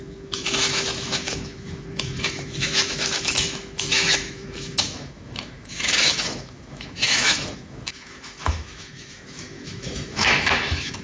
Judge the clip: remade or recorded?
remade